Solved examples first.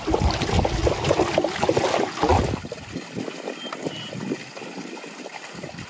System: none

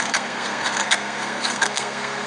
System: codec, SNAC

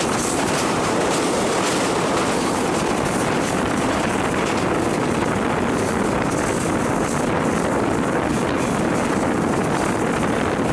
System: none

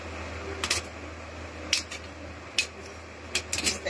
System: none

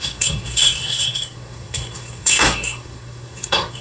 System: codec, SNAC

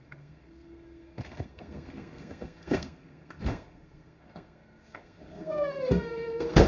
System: codec, SNAC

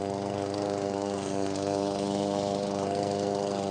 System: codec, SNAC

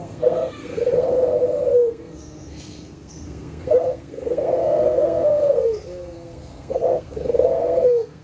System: codec, SNAC